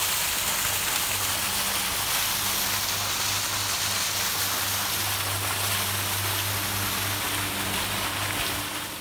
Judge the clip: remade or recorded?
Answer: recorded